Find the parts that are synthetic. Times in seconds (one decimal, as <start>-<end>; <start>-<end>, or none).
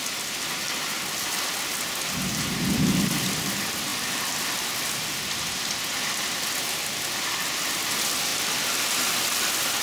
none